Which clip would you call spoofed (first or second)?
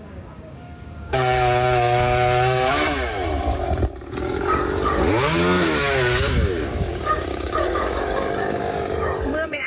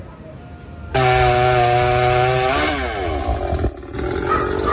first